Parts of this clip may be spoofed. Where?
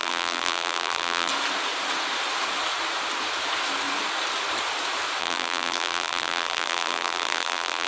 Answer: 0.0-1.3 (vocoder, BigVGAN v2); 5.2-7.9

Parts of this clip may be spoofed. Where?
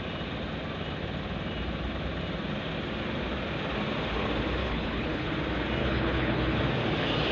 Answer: 4.6-5.3 (codec, HILCodec); 5.8-6.6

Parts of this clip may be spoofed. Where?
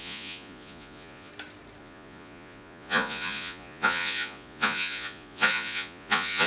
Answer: 0.0-1.3 (vocoder, Vocos); 1.8-6.5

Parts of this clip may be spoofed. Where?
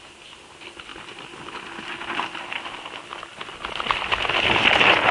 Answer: none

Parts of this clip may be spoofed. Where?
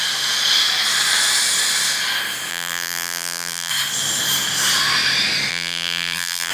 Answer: 2.5-3.7 (vocoder, BigVGAN v2); 5.5-6.5